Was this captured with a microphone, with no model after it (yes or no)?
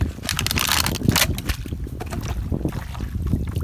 yes